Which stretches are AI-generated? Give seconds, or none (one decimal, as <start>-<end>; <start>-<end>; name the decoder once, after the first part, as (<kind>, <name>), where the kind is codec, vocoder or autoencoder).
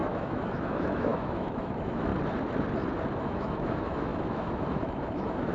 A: 0.0-2.1 (autoencoder, DAC-VAE); 3.2-5.5